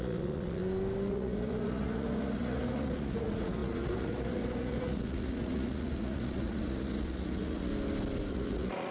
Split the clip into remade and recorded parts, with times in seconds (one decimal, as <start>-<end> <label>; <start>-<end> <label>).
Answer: 0.0-0.6 remade; 0.6-1.1 recorded; 1.1-7.7 remade; 7.7-8.3 recorded; 8.3-8.9 remade

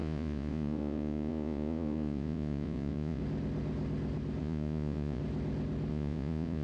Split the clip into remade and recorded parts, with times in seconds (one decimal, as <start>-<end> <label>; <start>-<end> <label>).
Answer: 0.0-3.2 remade; 3.2-4.4 recorded; 4.4-5.2 remade; 5.2-5.9 recorded; 5.9-6.6 remade

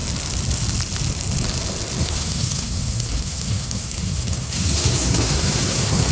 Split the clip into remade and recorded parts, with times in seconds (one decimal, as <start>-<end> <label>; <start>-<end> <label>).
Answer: 0.0-2.0 recorded; 2.0-6.1 remade